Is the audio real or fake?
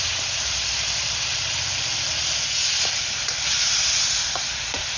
real